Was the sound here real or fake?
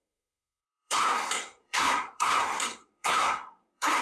fake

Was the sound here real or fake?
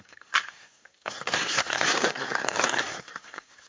fake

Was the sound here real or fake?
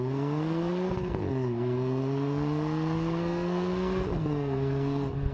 fake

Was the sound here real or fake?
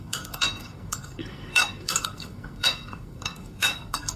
fake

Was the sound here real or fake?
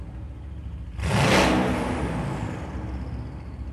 real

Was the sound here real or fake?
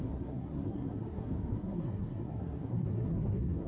fake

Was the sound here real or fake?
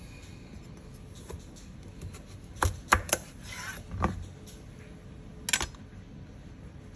real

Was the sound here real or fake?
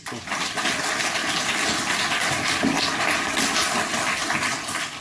real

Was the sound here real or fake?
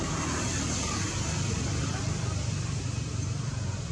real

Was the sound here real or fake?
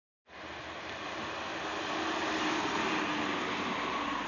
real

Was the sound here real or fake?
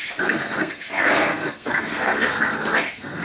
fake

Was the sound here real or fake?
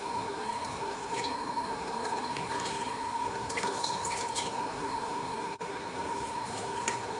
fake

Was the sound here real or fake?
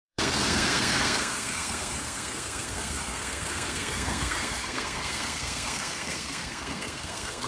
fake